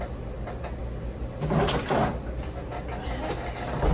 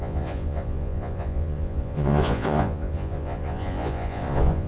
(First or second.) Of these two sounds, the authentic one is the first